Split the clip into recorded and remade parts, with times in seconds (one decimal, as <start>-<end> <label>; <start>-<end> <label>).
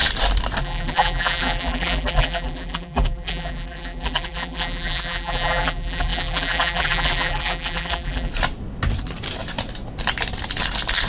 0.0-0.6 recorded; 0.6-8.3 remade; 8.3-11.1 recorded